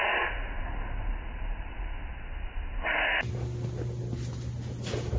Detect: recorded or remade recorded